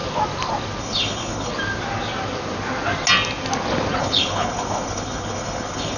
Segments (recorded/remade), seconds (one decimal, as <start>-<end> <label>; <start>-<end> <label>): 0.0-0.8 recorded; 0.8-1.5 remade; 1.5-4.0 recorded; 4.0-6.0 remade